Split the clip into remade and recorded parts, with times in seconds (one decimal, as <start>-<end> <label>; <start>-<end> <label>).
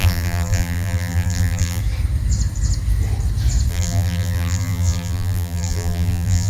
0.0-1.8 remade; 1.8-3.7 recorded; 3.7-6.5 remade